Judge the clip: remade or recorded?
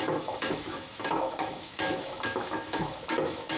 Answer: remade